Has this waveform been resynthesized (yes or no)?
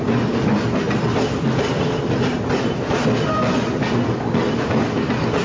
no